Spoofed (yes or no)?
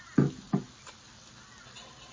no